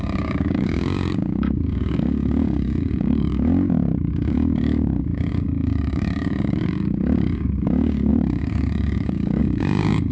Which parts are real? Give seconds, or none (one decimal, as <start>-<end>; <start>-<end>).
none